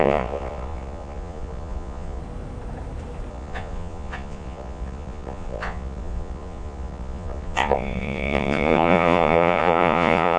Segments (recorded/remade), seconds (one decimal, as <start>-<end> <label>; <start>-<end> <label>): 0.0-2.2 remade; 2.2-3.3 recorded; 3.3-10.4 remade